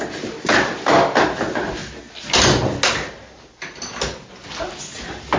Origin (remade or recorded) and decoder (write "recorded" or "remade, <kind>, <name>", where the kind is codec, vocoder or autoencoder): recorded